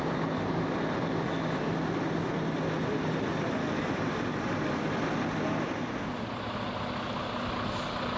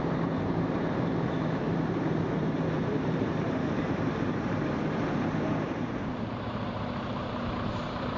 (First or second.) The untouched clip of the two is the first